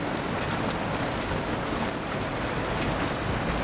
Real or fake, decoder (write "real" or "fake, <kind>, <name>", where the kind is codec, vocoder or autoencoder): real